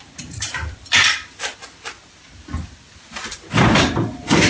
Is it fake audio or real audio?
fake